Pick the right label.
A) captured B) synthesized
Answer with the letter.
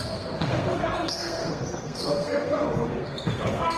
B